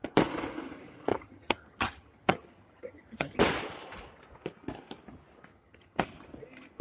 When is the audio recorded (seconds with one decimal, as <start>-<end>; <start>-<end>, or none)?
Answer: 0.0-1.1; 3.4-5.5; 6.0-6.8